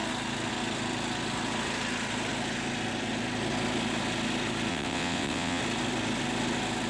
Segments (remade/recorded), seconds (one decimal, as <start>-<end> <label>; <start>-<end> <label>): 0.0-4.7 recorded; 4.7-5.6 remade; 5.6-6.9 recorded